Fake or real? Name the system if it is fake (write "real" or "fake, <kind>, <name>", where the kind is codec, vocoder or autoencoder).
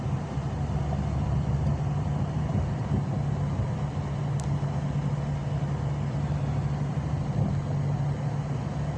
real